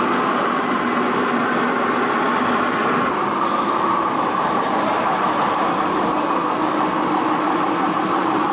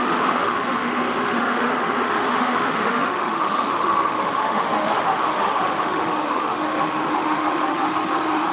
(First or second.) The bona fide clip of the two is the first